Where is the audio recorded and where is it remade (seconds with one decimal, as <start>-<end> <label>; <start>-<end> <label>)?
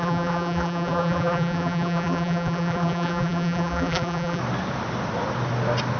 0.0-4.4 remade; 4.4-6.0 recorded